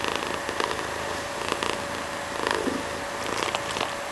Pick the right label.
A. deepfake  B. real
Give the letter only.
B